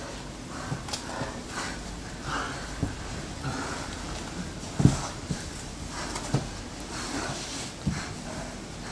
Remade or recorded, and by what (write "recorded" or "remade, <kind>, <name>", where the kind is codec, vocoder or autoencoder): recorded